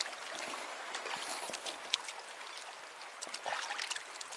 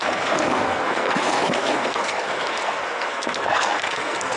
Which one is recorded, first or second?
first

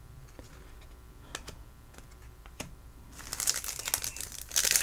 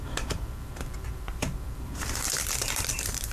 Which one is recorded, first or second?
first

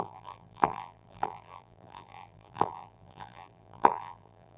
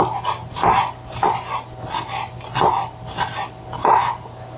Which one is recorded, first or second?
second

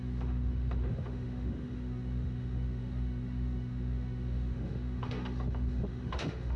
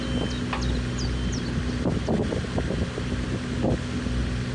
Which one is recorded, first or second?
second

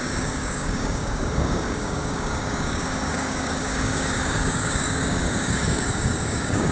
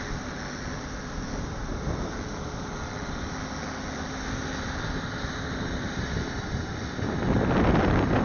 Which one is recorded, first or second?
second